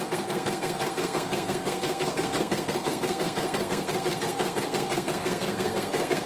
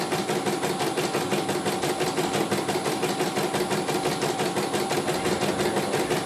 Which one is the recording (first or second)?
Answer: second